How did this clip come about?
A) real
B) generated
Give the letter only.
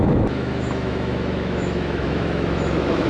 B